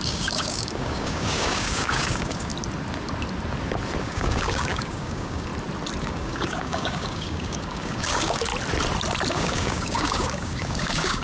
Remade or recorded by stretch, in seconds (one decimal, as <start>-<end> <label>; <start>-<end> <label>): 0.0-2.5 remade; 2.5-4.0 recorded; 4.0-5.5 remade; 5.5-6.0 recorded; 6.0-8.5 remade; 8.5-9.3 recorded; 9.3-11.2 remade